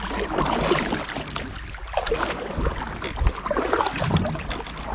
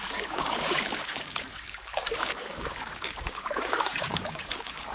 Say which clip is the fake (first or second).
second